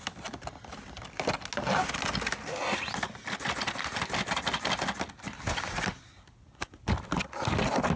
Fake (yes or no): no